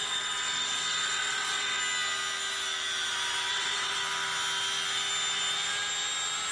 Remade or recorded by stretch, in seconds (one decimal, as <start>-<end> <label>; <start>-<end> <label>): 0.0-1.8 remade; 1.8-3.5 recorded; 3.5-4.0 remade; 4.0-6.5 recorded